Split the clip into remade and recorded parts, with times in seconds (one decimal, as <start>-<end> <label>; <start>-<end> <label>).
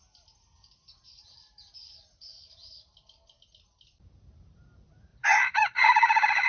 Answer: 0.0-5.1 recorded; 5.1-6.5 remade